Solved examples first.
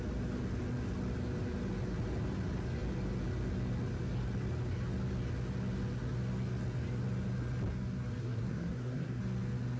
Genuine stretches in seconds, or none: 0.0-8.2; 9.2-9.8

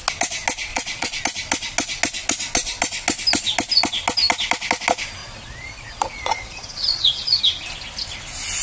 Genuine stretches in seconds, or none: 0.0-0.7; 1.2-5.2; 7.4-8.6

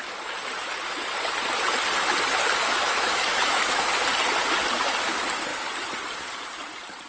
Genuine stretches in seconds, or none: 0.0-2.6; 3.9-7.1